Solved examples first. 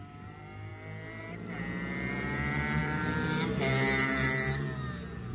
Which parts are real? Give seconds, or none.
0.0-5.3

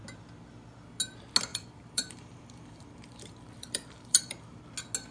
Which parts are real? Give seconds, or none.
0.0-1.5; 4.6-5.1